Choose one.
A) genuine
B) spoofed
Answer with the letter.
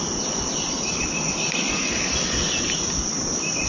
A